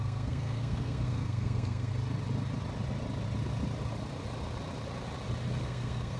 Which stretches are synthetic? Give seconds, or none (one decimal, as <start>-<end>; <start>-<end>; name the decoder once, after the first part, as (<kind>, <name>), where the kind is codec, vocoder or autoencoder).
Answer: 0.0-1.9 (codec, SNAC); 5.6-6.2